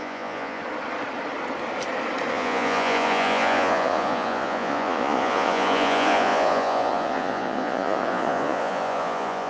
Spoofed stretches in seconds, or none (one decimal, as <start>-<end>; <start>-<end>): 0.0-0.6; 2.3-9.5